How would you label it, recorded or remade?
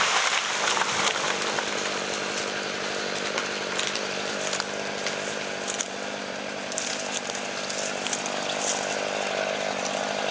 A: recorded